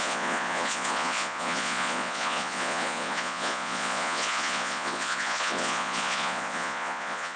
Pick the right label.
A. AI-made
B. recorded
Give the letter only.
A